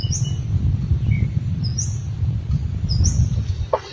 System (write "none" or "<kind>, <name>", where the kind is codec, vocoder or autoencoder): none